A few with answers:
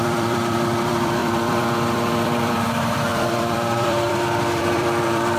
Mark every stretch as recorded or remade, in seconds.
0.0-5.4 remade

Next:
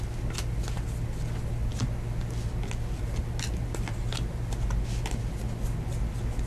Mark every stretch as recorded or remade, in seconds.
0.0-6.5 recorded

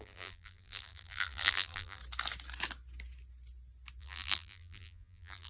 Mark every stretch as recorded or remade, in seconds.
0.0-2.0 remade; 2.0-4.0 recorded; 4.0-5.5 remade